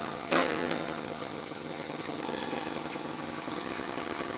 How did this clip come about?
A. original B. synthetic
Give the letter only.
B